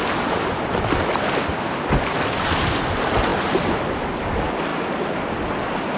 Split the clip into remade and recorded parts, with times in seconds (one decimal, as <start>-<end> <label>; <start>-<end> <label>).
0.0-6.0 recorded